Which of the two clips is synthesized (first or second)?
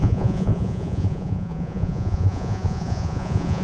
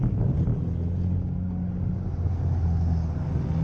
first